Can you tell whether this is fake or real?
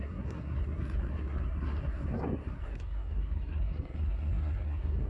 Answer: fake